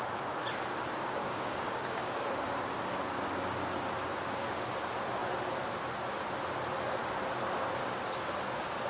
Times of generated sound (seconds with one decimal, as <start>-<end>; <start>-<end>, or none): 1.2-2.3